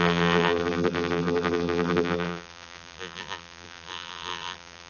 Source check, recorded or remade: remade